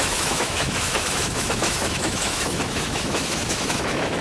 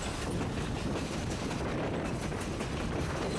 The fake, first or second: first